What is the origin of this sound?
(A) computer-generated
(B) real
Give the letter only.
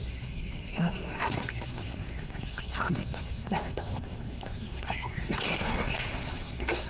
A